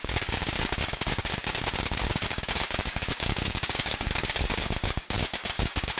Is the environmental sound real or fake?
fake